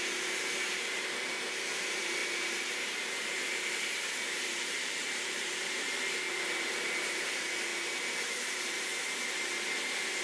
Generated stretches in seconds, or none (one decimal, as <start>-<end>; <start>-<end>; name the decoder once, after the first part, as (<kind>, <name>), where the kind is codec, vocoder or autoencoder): 0.0-7.7 (vocoder, BigVGAN v2); 8.3-8.9